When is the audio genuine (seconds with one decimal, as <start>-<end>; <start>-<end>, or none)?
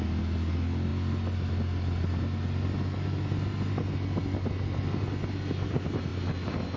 0.0-6.8